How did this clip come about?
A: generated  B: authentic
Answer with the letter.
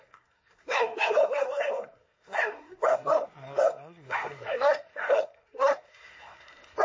A